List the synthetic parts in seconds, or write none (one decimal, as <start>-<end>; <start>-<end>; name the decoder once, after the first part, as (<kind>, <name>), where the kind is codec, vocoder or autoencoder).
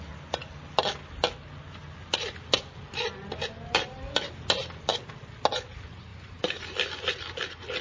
6.1-6.9 (vocoder, BigVGAN v2)